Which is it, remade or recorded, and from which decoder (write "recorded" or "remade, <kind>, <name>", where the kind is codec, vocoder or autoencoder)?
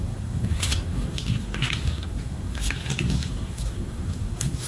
remade, codec, SNAC